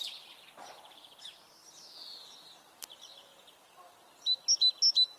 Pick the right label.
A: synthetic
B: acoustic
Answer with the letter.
B